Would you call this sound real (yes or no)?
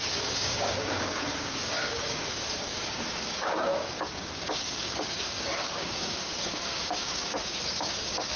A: no